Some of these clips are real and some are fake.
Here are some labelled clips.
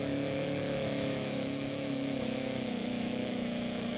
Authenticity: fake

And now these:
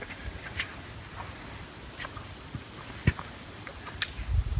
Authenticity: real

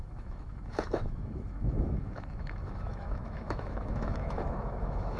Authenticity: fake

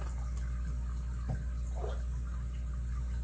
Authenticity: real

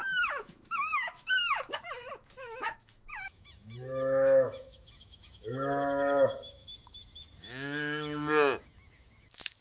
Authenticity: fake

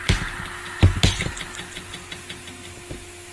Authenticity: real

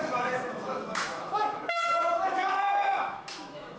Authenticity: fake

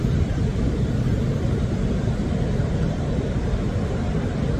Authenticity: real